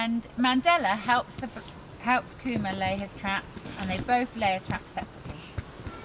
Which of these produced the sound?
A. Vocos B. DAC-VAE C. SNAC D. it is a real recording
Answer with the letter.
D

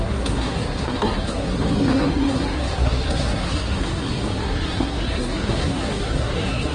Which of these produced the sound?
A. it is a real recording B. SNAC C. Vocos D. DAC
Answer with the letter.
B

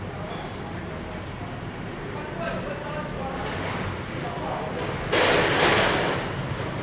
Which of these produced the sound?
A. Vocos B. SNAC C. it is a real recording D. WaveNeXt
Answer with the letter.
C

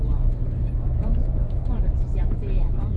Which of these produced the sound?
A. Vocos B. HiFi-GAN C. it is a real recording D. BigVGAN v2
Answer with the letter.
D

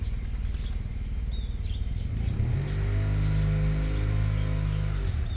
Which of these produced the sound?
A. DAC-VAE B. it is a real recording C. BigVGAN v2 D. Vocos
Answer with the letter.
B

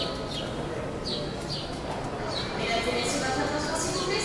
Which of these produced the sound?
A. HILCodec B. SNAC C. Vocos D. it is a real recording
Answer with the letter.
D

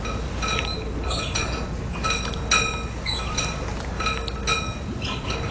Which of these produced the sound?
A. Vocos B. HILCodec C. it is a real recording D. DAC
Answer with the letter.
C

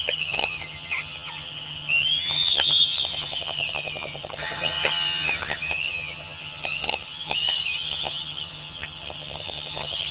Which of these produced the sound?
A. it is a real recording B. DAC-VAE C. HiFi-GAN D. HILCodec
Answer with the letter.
C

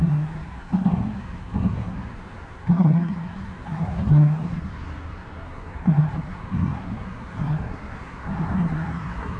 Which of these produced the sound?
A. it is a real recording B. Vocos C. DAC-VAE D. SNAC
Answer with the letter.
D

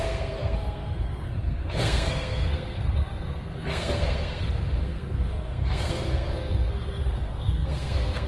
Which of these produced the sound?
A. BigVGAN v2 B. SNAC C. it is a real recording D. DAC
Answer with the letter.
B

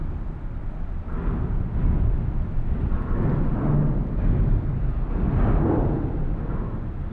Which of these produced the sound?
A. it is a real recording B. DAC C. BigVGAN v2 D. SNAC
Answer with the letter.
A